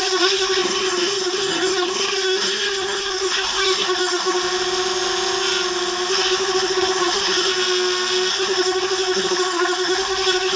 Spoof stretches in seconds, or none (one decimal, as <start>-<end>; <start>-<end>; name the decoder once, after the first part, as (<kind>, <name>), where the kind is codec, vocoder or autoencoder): 0.0-4.4 (codec, SNAC); 6.1-7.5; 8.3-10.6